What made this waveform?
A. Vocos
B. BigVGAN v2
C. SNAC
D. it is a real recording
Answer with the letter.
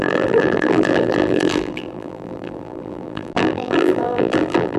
B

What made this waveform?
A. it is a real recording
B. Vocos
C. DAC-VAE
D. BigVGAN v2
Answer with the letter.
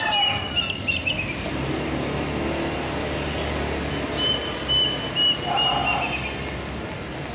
A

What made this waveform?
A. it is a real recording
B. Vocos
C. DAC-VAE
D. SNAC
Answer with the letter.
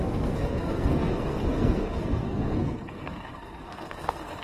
D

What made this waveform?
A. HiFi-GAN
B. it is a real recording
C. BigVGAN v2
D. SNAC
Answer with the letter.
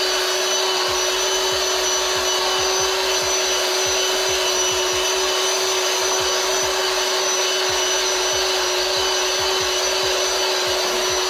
B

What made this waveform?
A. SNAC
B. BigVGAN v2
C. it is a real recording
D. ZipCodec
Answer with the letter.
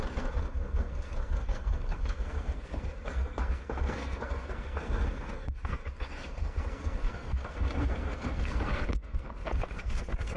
A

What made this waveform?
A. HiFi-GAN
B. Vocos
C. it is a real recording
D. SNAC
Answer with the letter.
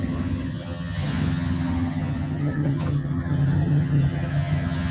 A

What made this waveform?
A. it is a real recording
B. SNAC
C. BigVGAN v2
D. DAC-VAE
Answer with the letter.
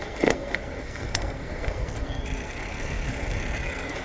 B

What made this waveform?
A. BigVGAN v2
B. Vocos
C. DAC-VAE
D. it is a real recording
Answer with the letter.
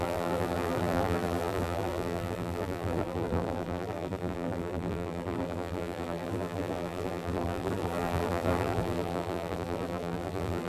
A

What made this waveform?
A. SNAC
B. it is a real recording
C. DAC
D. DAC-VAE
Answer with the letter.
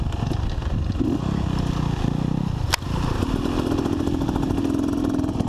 B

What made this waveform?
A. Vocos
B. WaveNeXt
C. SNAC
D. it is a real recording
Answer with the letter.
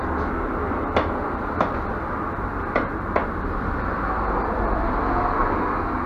D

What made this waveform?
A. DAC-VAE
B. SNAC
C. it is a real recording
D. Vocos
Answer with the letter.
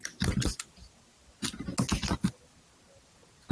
C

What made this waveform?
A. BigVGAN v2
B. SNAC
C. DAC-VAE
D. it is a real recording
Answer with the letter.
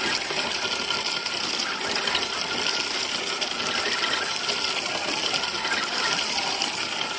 D